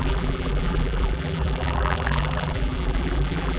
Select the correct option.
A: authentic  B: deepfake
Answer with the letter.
B